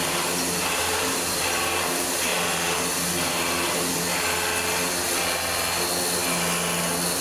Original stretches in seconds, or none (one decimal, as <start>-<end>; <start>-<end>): 4.1-7.2